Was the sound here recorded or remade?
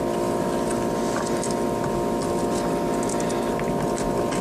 recorded